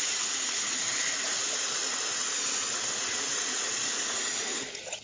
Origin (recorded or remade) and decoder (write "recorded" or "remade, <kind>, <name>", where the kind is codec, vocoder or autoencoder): remade, vocoder, Vocos